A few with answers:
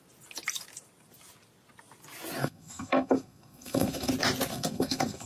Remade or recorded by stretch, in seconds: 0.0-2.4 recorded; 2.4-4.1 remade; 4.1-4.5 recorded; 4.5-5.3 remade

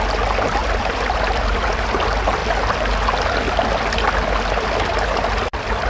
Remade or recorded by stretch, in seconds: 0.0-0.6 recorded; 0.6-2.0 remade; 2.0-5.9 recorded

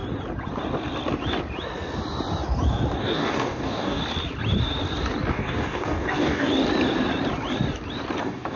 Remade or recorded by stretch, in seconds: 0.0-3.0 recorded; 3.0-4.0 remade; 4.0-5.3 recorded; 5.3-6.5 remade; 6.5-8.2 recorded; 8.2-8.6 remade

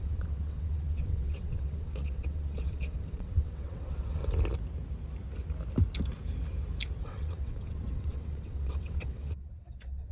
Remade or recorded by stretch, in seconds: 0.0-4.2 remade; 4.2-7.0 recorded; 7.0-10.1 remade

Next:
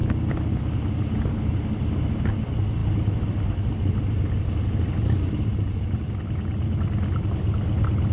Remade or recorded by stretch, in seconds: 0.0-8.1 recorded